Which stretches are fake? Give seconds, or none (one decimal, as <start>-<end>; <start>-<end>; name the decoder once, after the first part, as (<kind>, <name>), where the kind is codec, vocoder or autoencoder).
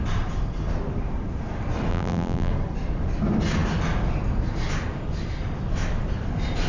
1.9-2.5 (vocoder, BigVGAN v2)